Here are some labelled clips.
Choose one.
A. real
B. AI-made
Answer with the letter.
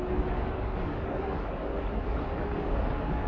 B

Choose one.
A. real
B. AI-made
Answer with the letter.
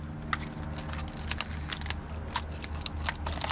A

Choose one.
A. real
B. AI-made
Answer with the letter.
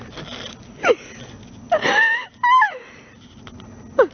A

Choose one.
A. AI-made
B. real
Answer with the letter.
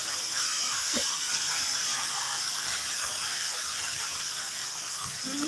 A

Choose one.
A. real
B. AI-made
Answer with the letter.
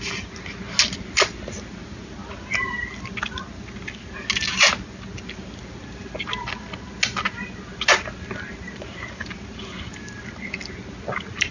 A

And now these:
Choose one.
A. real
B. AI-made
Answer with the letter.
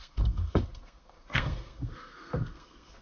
B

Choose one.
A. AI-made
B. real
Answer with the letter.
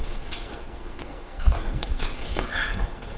A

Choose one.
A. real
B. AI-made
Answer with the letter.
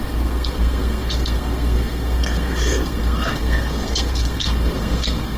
B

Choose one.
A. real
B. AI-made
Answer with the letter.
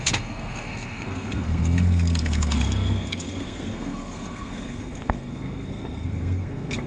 B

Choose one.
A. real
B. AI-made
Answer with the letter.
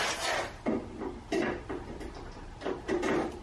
A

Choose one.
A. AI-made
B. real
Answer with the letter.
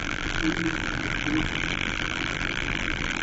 A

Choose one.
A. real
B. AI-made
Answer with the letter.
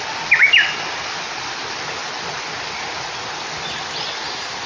A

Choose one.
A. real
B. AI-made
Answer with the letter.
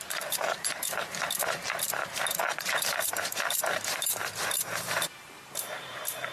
B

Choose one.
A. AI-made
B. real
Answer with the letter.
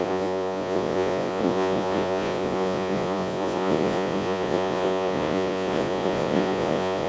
A